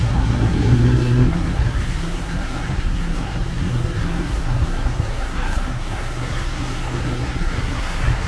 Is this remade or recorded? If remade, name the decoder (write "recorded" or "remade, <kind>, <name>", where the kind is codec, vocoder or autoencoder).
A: remade, codec, SNAC